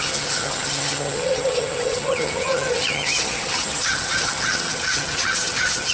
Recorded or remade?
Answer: remade